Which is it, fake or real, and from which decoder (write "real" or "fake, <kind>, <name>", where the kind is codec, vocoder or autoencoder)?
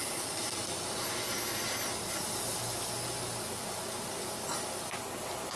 real